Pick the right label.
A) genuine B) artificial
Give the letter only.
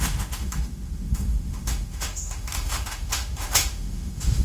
B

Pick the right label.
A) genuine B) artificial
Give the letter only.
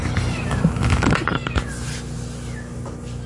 A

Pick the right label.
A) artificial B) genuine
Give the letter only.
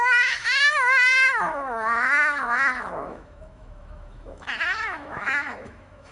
A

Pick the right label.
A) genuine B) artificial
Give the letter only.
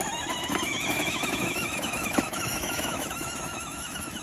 B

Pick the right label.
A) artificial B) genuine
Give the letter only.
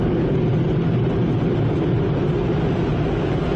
B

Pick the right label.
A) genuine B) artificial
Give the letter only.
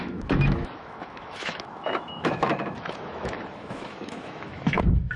B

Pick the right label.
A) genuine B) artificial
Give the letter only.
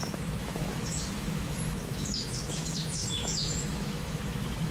B